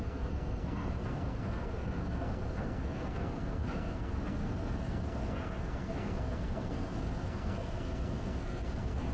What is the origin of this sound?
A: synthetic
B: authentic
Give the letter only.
A